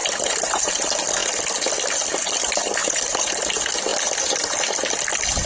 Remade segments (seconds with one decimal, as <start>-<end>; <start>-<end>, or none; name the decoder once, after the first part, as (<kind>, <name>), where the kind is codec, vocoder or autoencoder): 0.0-0.7 (vocoder, BigVGAN v2); 2.8-3.3